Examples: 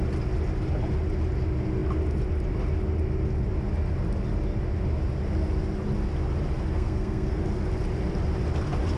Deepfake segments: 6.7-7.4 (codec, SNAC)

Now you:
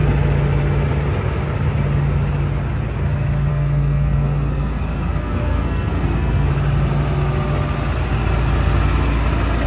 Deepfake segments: 3.5-6.5 (codec, SNAC)

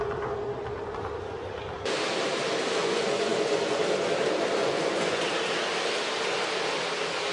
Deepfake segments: 2.8-3.8 (vocoder, Vocos); 4.6-5.2

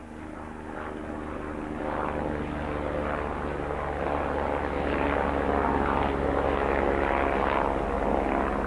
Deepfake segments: none

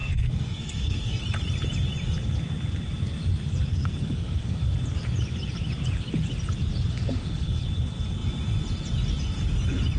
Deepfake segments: 0.0-1.2 (codec, SNAC); 3.7-4.6; 6.9-7.6

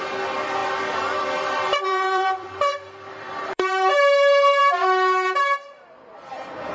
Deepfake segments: 0.6-4.0 (vocoder, BigVGAN v2)